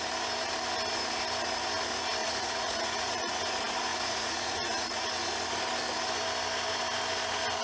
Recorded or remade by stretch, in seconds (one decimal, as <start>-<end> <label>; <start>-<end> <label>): 0.0-2.2 recorded; 2.2-3.4 remade; 3.4-3.9 recorded; 3.9-5.1 remade; 5.1-7.6 recorded